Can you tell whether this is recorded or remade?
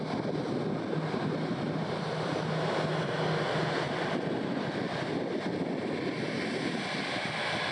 recorded